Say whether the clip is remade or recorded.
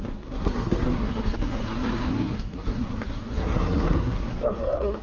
remade